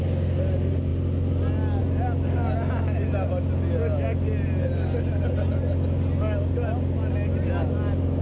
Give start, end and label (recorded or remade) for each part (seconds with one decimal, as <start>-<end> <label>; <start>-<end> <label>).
0.0-8.2 recorded